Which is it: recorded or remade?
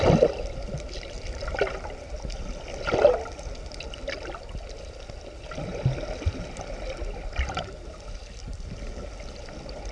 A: recorded